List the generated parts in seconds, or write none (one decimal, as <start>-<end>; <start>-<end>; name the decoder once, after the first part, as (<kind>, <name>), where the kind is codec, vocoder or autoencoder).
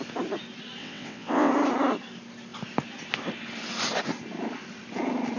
0.8-1.5 (vocoder, WaveNeXt)